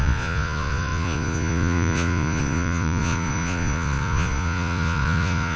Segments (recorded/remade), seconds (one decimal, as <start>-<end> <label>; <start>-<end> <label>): 0.0-5.6 remade